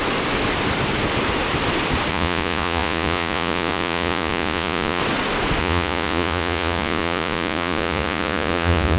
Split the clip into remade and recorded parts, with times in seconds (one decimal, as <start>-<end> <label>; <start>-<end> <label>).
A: 0.0-2.1 recorded; 2.1-5.0 remade; 5.0-5.6 recorded; 5.6-9.0 remade